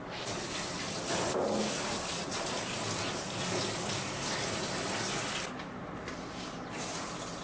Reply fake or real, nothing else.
real